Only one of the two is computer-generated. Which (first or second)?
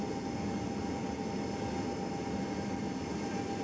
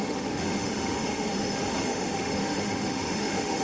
second